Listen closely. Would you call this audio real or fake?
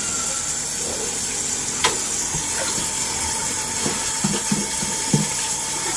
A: real